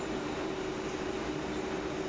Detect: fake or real real